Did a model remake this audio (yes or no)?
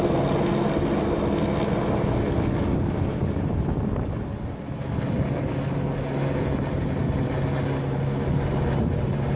no